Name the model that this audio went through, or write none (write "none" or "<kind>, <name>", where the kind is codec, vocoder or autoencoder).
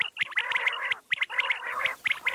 vocoder, BigVGAN v2